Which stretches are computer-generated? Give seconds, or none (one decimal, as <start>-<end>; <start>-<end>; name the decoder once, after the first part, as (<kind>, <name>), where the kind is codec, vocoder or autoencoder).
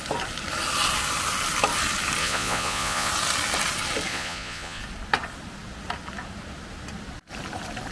2.2-3.1 (vocoder, Vocos); 4.1-4.8